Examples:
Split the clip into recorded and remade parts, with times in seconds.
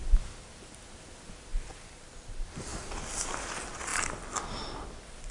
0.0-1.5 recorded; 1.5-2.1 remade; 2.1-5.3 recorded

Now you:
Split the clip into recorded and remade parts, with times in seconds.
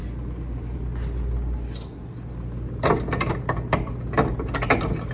0.0-5.1 recorded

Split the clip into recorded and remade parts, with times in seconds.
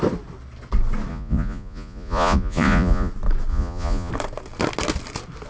0.0-1.1 recorded; 1.1-3.1 remade; 3.1-3.5 recorded; 3.5-4.1 remade; 4.1-5.5 recorded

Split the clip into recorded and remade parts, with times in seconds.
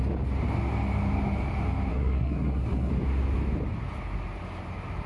0.0-1.9 recorded; 1.9-2.9 remade; 2.9-5.1 recorded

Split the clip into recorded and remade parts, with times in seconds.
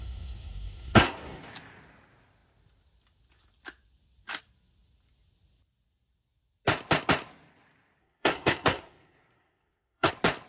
0.0-1.4 remade; 1.4-8.0 recorded; 8.0-10.1 remade; 10.1-10.5 recorded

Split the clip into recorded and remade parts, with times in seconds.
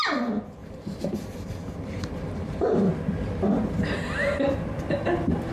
0.0-0.6 recorded; 0.6-2.9 remade; 2.9-5.5 recorded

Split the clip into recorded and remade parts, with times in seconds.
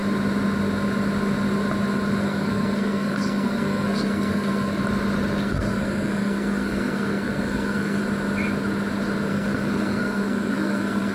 0.0-2.2 recorded; 2.2-4.8 remade; 4.8-5.4 recorded; 5.4-8.0 remade; 8.0-9.3 recorded; 9.3-11.1 remade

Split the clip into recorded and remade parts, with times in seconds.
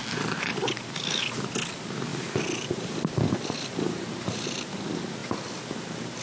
0.0-2.1 recorded; 2.1-4.1 remade; 4.1-6.2 recorded